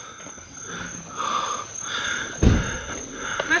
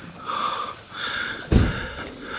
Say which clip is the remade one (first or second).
second